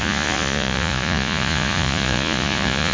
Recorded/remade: remade